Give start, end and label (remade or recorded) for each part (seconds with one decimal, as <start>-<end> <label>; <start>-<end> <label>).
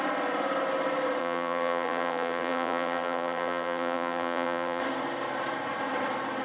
0.0-1.2 recorded; 1.2-4.8 remade; 4.8-6.4 recorded